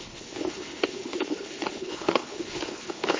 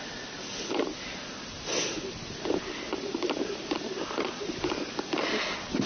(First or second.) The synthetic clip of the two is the first